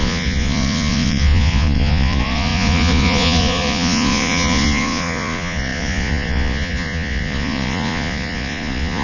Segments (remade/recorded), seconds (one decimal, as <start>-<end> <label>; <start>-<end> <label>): 0.0-9.0 remade